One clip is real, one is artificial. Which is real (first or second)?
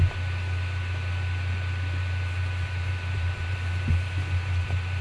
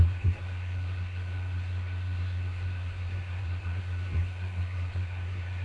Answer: first